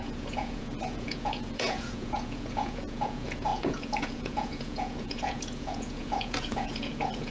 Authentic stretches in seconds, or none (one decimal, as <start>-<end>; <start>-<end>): none